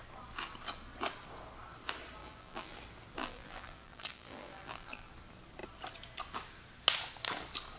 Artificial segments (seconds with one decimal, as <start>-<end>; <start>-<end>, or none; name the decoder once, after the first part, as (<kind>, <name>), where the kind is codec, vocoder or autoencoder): 2.2-2.8 (vocoder, BigVGAN v2); 3.2-5.1